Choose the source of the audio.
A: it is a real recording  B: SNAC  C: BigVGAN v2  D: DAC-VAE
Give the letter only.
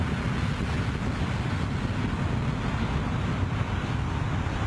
A